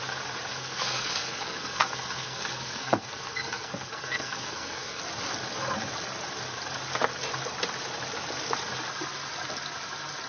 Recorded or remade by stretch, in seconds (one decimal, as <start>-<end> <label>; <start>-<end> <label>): 0.0-0.5 recorded; 0.5-5.0 remade; 5.0-10.3 recorded